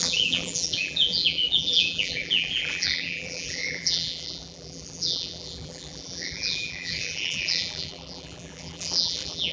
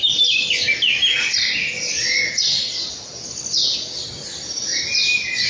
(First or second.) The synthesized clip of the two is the first